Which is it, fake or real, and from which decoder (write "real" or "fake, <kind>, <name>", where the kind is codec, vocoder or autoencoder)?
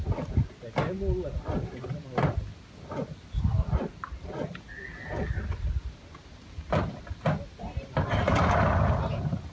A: real